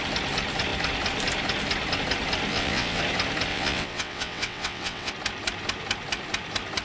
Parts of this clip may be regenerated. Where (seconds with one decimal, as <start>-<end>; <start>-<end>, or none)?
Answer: 2.5-3.0; 3.5-5.1